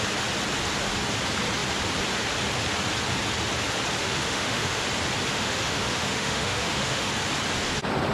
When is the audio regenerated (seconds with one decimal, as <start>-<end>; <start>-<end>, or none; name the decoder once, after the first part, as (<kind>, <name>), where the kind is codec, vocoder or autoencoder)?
4.0-4.8 (autoencoder, DAC-VAE); 5.3-7.1